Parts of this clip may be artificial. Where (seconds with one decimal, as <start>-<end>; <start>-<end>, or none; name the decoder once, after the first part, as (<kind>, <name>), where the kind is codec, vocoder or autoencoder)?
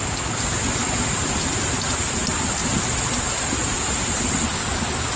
0.8-2.1 (vocoder, BigVGAN v2); 2.6-5.2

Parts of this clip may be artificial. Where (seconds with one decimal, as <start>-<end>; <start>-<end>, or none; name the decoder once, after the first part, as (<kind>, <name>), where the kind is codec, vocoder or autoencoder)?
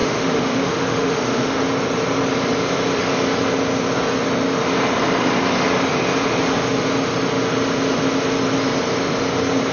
0.0-1.6 (autoencoder, DAC-VAE)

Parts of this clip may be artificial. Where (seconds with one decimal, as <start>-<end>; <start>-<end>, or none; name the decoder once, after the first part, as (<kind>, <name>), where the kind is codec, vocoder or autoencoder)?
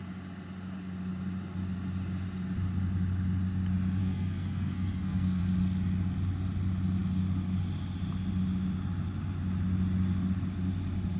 4.0-5.4 (codec, SNAC)